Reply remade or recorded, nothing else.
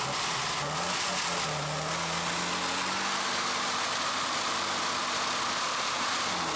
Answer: recorded